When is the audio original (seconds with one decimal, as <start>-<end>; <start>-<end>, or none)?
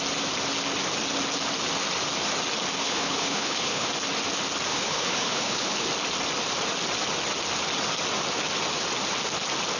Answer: 0.0-2.8; 3.9-4.7; 5.9-9.8